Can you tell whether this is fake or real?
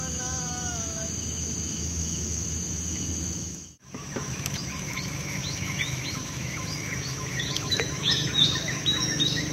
fake